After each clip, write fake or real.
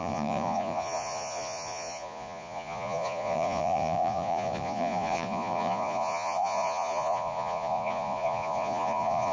fake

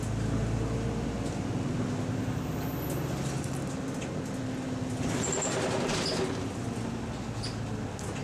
real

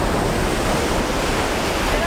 real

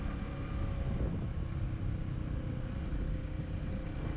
real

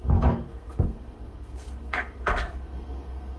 fake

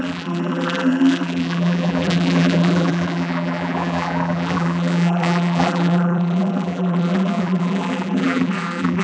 fake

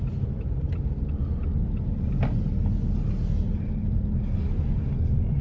real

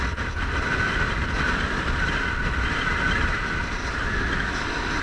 real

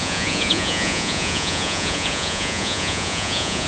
fake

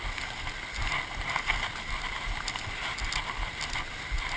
real